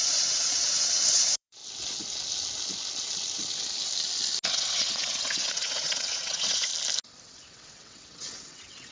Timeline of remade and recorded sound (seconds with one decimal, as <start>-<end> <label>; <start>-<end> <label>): 0.0-1.6 remade; 1.6-4.5 recorded; 4.5-6.7 remade; 6.7-7.2 recorded; 7.2-8.9 remade